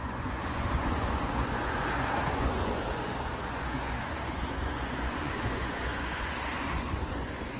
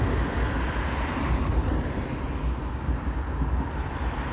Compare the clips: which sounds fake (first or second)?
first